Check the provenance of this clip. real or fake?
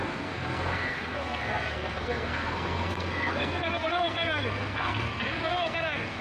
fake